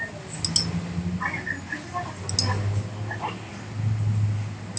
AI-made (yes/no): no